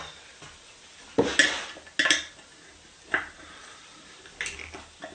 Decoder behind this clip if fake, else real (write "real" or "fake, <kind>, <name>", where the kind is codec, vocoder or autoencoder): real